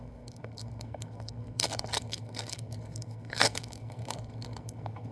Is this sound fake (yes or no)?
yes